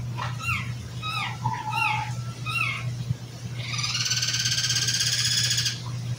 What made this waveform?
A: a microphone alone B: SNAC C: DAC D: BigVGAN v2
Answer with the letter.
A